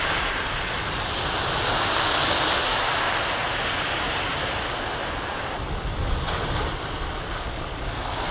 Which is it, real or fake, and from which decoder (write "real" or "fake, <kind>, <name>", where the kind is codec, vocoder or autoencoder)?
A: real